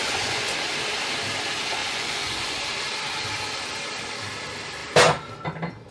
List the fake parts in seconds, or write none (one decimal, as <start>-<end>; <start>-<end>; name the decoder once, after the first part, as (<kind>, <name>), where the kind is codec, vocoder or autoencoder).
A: 0.0-0.7 (vocoder, Vocos); 1.8-2.6